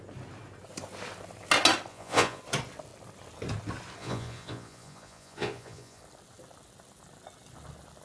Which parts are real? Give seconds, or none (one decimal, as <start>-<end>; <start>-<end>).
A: 0.0-1.9; 2.4-4.0; 6.0-8.0